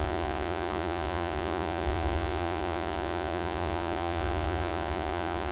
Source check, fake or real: fake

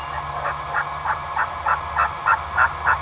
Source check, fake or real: real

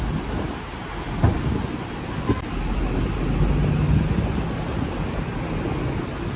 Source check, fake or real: real